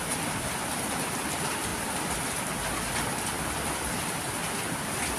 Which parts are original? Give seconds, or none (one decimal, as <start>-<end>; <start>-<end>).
0.0-5.2